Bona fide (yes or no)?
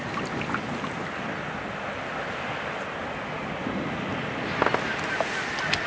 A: yes